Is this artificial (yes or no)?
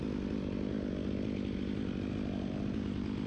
no